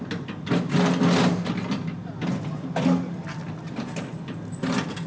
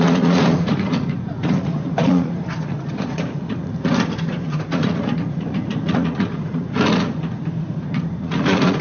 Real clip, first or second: first